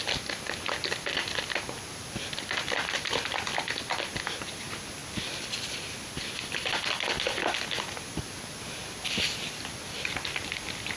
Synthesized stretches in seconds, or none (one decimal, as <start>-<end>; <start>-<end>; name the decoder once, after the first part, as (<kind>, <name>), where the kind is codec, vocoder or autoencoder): none